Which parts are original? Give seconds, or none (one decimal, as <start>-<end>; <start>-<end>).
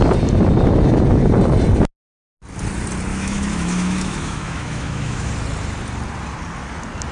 0.0-3.1; 5.3-7.1